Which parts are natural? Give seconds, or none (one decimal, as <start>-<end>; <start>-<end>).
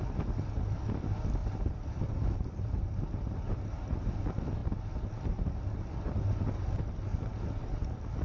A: 0.0-1.4; 4.0-8.2